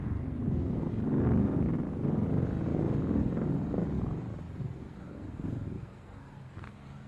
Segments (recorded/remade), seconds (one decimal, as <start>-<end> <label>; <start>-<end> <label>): 0.0-0.9 remade; 0.9-4.6 recorded; 4.6-7.1 remade